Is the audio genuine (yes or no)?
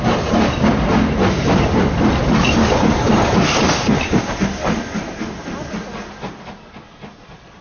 yes